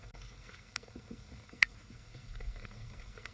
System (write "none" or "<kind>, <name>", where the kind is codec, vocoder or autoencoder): codec, SNAC